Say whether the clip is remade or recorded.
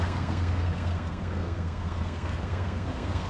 remade